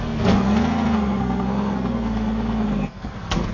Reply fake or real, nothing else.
fake